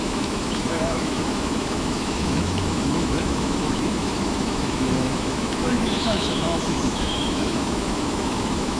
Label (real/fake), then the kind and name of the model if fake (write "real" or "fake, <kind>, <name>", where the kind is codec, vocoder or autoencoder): fake, autoencoder, DAC-VAE